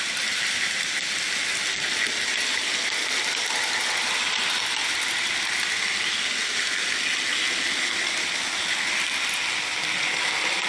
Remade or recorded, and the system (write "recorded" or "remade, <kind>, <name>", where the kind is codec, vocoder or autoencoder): recorded